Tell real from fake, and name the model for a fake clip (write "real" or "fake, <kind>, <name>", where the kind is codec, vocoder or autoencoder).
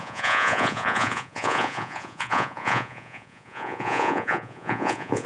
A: fake, vocoder, Vocos